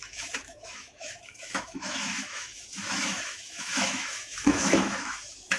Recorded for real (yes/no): no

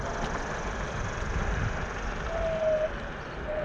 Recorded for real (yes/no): yes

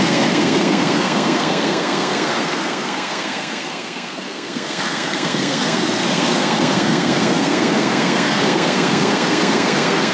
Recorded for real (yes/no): no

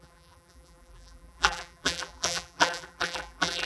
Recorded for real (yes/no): no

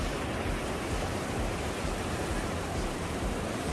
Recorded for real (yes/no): no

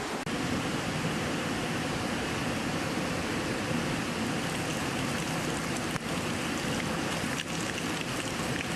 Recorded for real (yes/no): yes